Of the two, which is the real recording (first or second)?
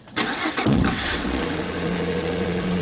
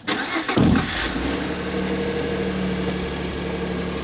second